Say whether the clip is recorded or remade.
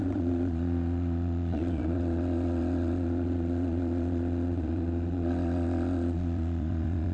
remade